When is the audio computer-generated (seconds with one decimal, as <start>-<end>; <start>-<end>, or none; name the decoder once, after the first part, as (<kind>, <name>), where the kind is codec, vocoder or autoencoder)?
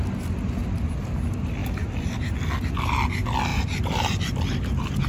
none